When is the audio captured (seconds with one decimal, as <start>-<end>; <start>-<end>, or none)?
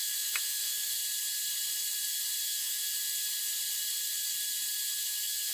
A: 1.0-2.4; 2.9-5.1